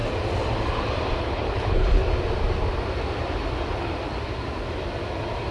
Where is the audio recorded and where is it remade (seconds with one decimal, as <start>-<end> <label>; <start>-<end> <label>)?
0.0-1.2 recorded; 1.2-2.0 remade; 2.0-5.5 recorded